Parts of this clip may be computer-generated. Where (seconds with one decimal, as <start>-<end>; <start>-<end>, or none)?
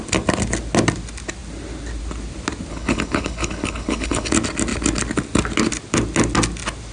2.7-4.3